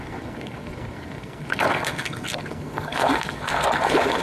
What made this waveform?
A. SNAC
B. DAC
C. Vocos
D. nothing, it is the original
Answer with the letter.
A